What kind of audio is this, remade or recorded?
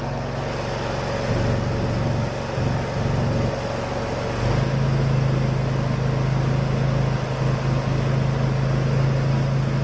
recorded